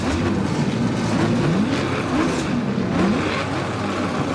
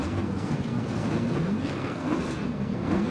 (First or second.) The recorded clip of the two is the first